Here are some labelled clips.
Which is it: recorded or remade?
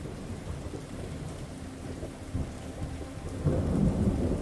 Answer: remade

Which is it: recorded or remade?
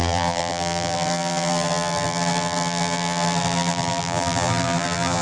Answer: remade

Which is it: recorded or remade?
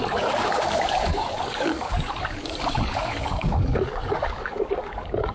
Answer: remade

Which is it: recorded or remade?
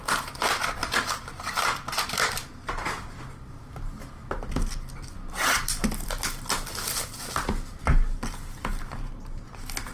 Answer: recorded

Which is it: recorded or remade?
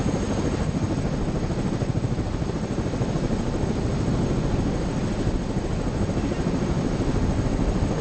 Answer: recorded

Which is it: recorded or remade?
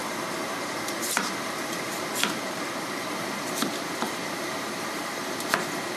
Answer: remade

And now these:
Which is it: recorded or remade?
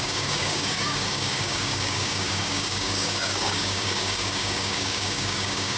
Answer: remade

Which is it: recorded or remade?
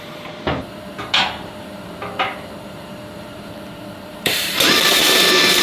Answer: remade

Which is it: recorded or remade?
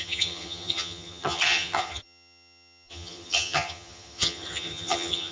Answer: remade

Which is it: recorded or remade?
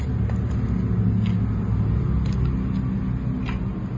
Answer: recorded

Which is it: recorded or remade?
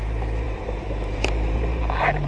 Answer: remade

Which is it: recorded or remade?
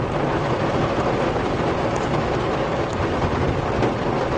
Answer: recorded